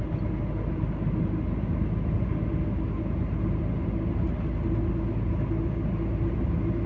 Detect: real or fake real